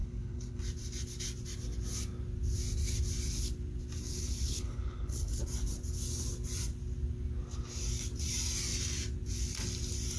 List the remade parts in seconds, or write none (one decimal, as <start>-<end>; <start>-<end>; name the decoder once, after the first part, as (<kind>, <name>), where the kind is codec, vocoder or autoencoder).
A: 0.0-0.6 (codec, HILCodec); 4.0-5.4